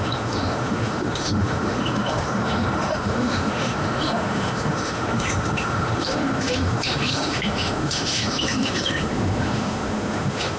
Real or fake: fake